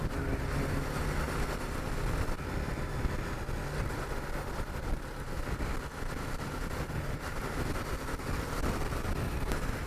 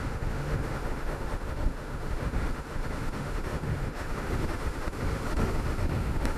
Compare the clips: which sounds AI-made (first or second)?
second